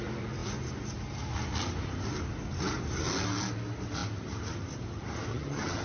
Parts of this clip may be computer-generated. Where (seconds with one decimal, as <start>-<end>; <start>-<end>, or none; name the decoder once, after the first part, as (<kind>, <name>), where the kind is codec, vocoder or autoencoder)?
5.3-5.8 (vocoder, HiFi-GAN)